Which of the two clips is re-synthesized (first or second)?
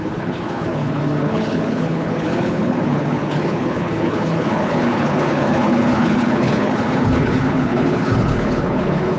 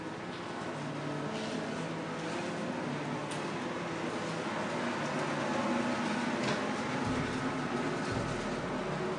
first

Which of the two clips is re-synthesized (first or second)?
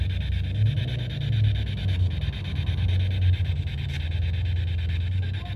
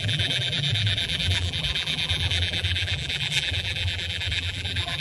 second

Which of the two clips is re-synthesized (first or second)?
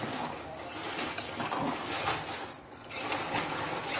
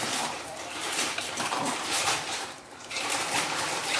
second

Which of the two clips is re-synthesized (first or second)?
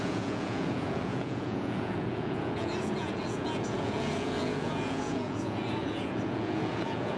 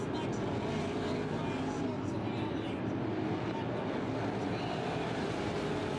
first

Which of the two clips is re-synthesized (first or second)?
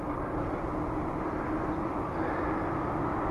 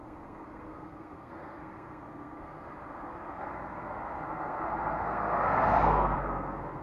second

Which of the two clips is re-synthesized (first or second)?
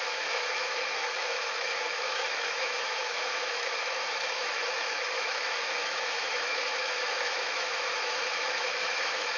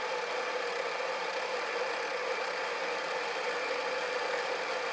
first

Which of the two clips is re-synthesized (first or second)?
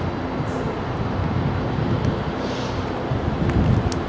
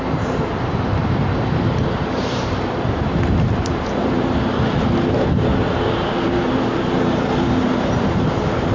second